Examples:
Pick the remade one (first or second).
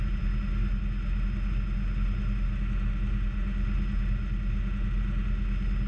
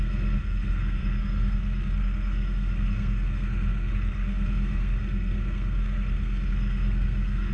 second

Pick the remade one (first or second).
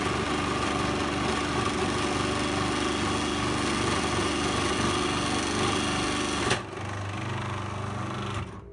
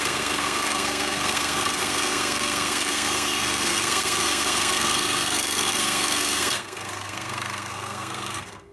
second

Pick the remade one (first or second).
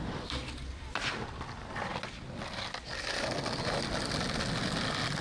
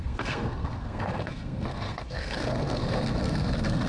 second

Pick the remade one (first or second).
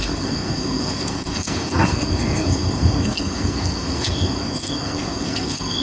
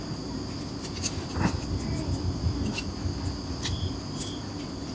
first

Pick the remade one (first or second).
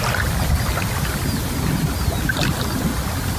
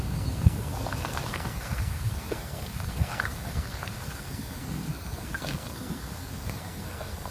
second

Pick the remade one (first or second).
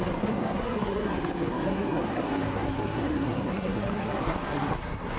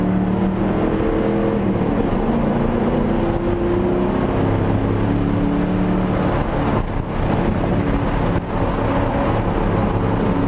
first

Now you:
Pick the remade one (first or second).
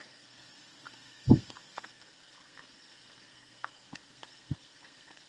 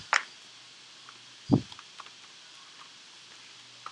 first